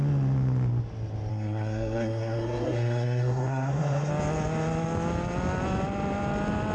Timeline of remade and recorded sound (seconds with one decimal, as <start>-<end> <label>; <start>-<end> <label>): 0.0-1.3 recorded; 1.3-4.1 remade; 4.1-6.7 recorded